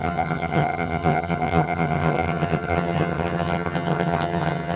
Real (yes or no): no